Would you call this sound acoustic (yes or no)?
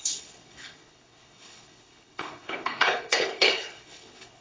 no